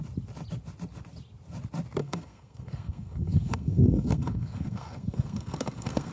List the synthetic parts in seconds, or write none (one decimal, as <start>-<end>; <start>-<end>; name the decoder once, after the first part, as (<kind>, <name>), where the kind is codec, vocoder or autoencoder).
2.0-6.1 (codec, SNAC)